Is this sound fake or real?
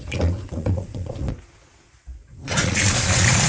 fake